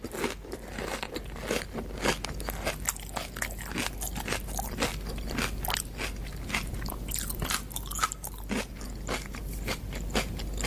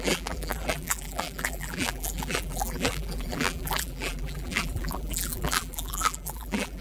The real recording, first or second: first